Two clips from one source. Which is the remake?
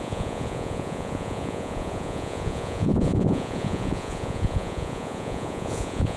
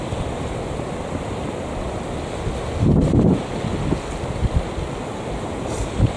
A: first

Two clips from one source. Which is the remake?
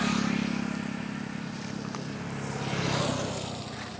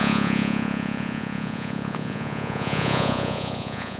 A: second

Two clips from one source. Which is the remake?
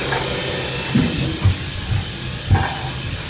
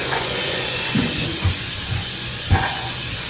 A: second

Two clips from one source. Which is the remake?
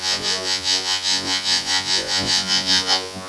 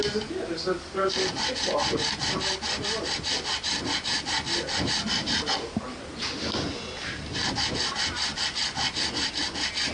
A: first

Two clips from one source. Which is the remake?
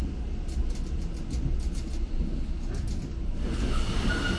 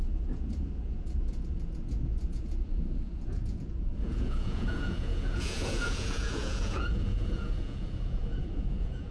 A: second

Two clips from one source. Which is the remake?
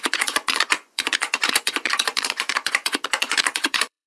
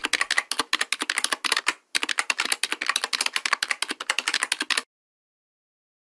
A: first